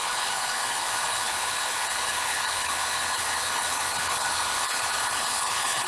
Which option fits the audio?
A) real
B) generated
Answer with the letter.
B